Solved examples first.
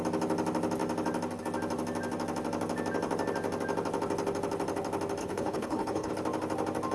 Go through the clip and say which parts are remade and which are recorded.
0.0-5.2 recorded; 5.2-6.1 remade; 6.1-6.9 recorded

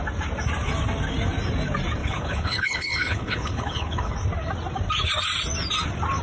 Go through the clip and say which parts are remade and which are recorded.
0.0-2.0 recorded; 2.0-4.1 remade; 4.1-6.2 recorded